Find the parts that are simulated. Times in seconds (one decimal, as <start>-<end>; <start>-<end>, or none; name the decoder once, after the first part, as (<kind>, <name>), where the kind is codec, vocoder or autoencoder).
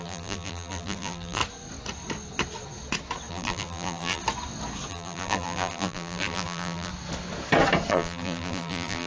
0.0-1.4 (vocoder, BigVGAN v2); 3.3-4.2; 4.9-6.9; 7.9-9.1